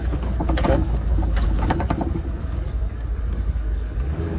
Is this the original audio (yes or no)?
no